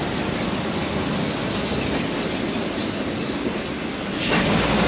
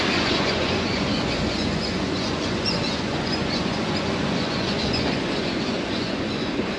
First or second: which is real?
first